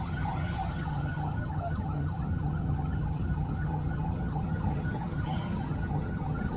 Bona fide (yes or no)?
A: no